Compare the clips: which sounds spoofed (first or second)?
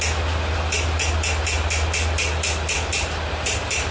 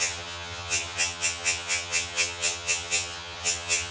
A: second